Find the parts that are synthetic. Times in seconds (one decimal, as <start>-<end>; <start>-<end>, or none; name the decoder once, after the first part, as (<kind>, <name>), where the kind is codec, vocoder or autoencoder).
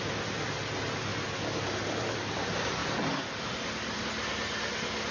2.8-4.0 (vocoder, BigVGAN v2)